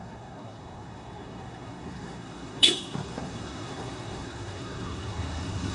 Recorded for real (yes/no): no